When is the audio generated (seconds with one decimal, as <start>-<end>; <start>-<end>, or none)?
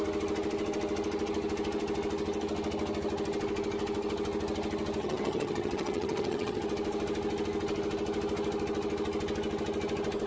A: 5.0-6.6